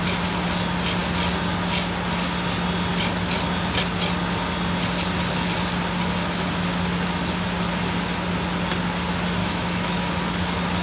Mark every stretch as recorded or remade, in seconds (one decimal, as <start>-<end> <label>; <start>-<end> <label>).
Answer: 0.0-9.4 recorded; 9.4-10.1 remade; 10.1-10.8 recorded